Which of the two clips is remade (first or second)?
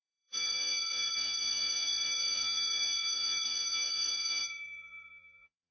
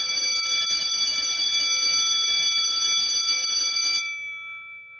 first